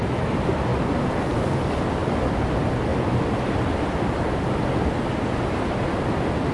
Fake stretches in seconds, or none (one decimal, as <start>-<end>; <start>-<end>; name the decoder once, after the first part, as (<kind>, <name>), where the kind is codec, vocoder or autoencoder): 0.0-0.7 (vocoder, BigVGAN v2); 1.9-2.9